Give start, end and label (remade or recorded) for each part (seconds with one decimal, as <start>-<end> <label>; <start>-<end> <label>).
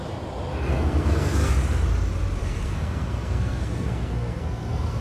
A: 0.0-0.7 recorded; 0.7-1.5 remade; 1.5-2.4 recorded; 2.4-5.0 remade